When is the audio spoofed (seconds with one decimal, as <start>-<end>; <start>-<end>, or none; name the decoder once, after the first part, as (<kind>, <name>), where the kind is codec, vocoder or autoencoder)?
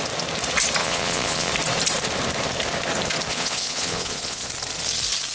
0.8-1.5 (vocoder, Vocos); 3.3-4.5